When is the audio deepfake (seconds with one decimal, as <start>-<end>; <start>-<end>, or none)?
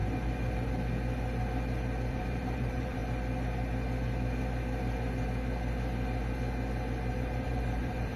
2.1-3.0; 7.1-8.2